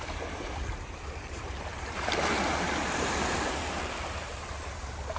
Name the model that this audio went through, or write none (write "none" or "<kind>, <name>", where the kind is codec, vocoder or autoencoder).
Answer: vocoder, BigVGAN v2